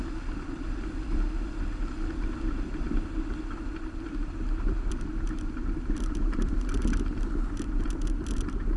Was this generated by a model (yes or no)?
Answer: yes